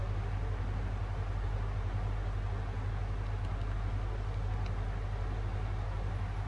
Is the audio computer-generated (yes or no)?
no